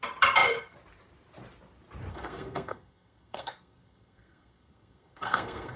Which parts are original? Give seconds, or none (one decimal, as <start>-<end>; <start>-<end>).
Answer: 0.0-2.1